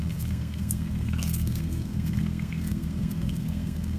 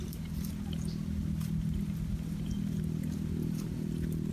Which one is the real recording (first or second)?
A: second